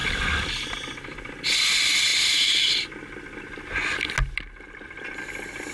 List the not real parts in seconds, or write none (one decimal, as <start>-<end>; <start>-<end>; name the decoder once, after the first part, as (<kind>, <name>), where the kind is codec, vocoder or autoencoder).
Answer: 0.0-1.7 (vocoder, BigVGAN v2)